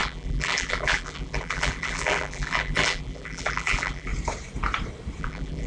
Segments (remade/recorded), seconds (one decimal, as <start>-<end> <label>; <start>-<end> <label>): 0.0-4.1 remade; 4.1-5.2 recorded; 5.2-5.7 remade